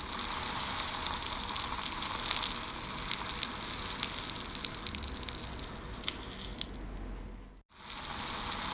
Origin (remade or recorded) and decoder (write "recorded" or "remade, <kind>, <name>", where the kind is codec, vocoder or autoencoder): recorded